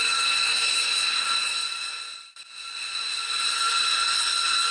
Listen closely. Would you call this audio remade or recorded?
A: recorded